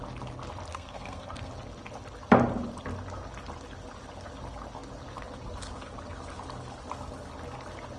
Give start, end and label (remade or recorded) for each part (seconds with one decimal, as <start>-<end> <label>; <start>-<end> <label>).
0.0-0.7 recorded; 0.7-1.5 remade; 1.5-8.0 recorded